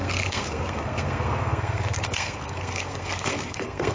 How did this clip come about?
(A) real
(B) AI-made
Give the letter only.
B